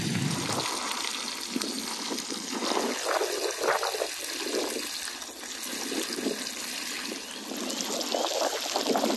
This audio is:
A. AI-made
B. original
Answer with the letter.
B